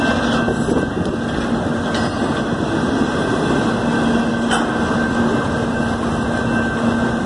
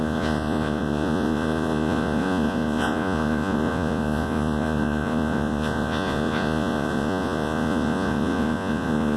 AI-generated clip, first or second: second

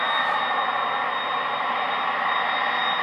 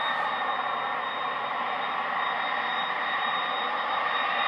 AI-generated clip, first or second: second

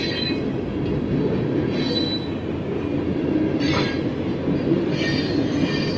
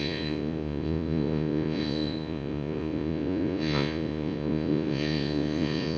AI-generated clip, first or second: second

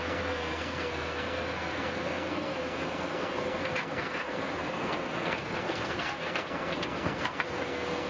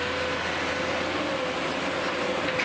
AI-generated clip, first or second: first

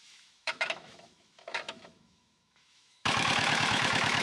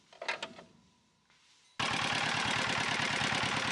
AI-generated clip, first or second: first